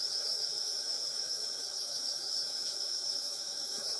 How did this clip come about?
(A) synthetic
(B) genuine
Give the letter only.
A